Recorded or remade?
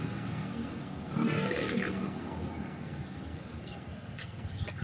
remade